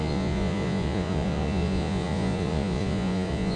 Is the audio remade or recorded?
remade